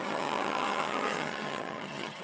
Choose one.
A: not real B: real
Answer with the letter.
A